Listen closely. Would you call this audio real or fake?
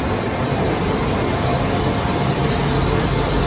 real